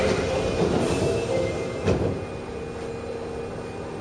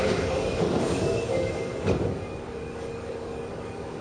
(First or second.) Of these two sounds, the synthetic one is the second